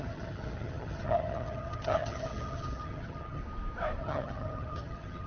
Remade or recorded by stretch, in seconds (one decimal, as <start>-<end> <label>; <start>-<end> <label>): 0.0-3.4 remade; 3.4-4.0 recorded; 4.0-5.3 remade